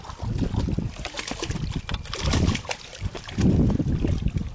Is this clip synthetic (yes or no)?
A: no